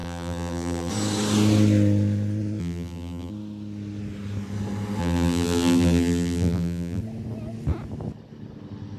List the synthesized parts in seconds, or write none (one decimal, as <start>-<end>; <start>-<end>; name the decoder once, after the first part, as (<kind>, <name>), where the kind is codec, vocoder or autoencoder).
0.0-0.9 (vocoder, BigVGAN v2); 2.6-3.3; 5.0-7.0